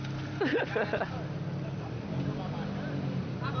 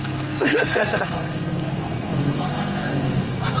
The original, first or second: first